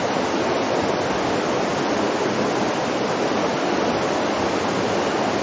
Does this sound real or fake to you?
real